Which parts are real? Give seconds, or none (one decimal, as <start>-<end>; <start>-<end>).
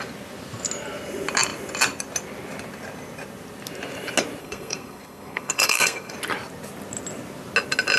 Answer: 0.0-4.4; 6.1-8.0